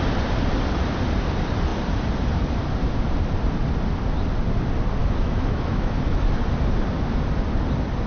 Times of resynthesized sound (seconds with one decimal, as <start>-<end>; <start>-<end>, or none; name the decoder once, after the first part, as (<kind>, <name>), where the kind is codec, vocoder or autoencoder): 5.0-6.3 (autoencoder, DAC-VAE)